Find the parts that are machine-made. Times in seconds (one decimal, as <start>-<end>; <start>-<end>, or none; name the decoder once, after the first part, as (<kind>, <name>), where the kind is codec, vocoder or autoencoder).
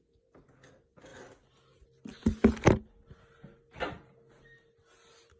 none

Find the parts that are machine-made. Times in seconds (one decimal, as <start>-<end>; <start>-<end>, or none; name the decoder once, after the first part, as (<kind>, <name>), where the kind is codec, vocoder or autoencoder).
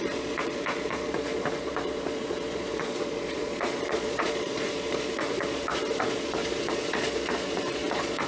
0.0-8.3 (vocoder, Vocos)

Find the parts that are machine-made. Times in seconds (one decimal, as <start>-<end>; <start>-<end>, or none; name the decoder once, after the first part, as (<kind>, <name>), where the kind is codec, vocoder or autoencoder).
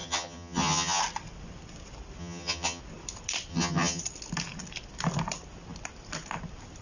0.0-1.0 (vocoder, HiFi-GAN); 2.2-2.8; 3.5-4.0